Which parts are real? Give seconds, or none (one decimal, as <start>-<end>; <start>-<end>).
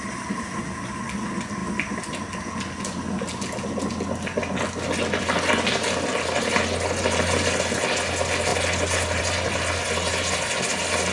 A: 0.0-11.1